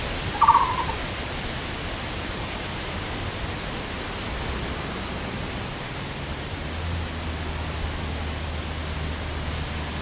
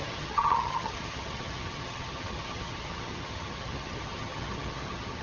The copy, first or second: second